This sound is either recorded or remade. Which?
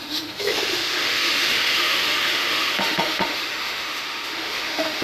remade